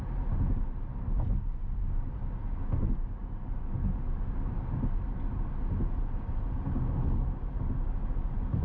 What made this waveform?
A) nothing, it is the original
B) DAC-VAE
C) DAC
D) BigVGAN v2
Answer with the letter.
A